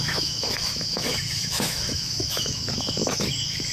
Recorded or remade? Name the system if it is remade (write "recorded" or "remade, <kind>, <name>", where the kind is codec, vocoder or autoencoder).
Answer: remade, autoencoder, DAC-VAE